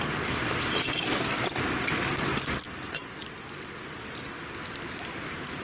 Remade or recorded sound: recorded